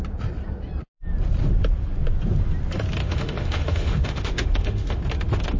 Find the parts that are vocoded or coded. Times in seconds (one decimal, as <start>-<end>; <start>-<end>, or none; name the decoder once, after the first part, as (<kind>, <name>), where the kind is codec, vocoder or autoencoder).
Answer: 3.0-5.0 (autoencoder, DAC-VAE)